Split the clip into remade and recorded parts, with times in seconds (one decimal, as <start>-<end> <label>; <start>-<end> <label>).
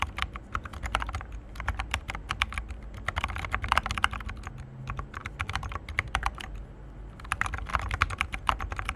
0.0-9.0 recorded